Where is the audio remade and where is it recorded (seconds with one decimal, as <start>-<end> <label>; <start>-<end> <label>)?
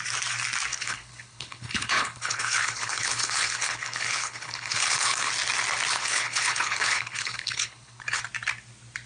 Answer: 0.0-0.7 recorded; 0.7-5.3 remade; 5.3-5.9 recorded; 5.9-8.2 remade; 8.2-9.1 recorded